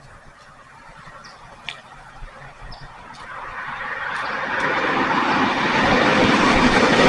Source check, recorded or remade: recorded